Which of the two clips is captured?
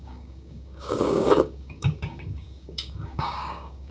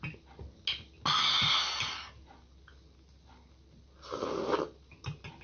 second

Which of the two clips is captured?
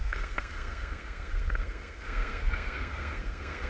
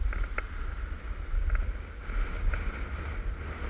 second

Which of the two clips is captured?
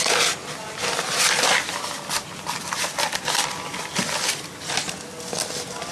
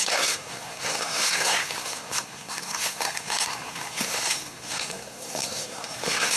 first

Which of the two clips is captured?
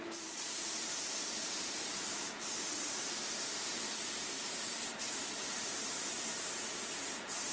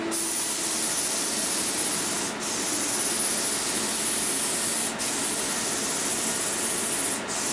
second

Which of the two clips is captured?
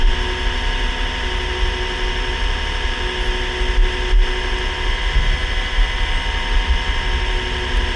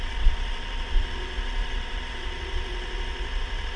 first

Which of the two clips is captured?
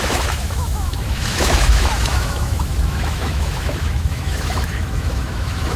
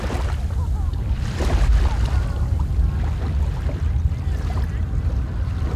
second